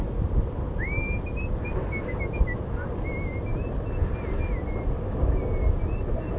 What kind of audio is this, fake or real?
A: real